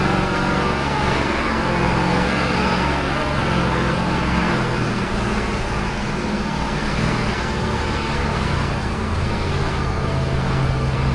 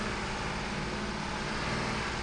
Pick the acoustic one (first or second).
second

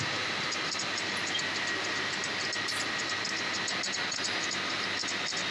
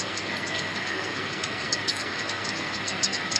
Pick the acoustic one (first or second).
first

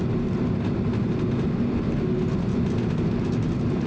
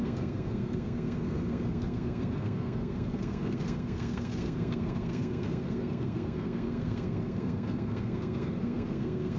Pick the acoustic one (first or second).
first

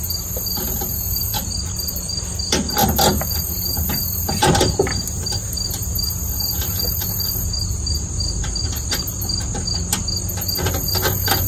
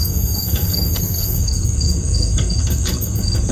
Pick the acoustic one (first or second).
first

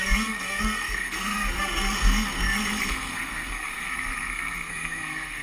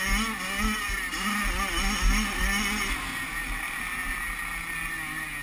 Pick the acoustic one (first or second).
second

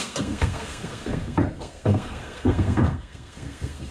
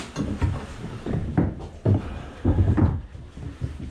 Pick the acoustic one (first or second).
second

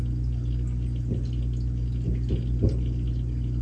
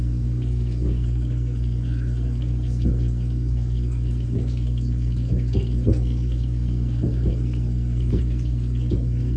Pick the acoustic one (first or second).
first